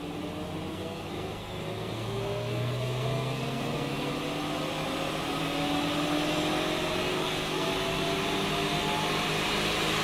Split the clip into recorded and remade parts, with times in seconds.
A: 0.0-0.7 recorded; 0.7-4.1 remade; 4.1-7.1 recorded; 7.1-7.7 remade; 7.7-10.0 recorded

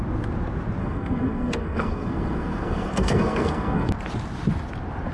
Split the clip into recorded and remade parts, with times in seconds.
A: 0.0-0.8 recorded; 0.8-3.9 remade; 3.9-5.1 recorded

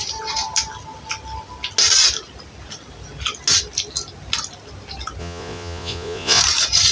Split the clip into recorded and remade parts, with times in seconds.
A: 0.0-5.2 recorded; 5.2-6.4 remade; 6.4-6.9 recorded